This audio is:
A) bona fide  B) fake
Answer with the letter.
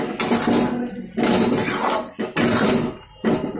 A